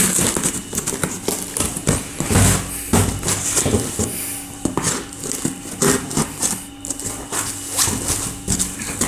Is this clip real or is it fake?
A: real